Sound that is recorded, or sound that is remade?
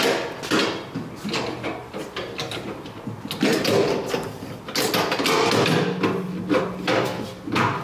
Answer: recorded